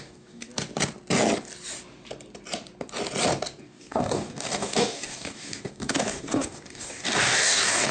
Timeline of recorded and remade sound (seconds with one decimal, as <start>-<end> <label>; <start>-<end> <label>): 0.0-0.5 remade; 0.5-3.6 recorded; 3.6-7.9 remade